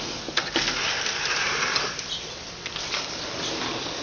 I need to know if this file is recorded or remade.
recorded